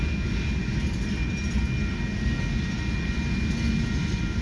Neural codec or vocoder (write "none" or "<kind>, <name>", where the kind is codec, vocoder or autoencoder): none